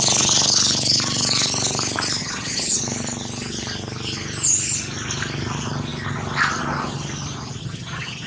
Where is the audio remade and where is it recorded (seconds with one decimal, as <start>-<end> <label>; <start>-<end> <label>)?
0.0-2.2 recorded; 2.2-2.8 remade; 2.8-7.6 recorded; 7.6-8.3 remade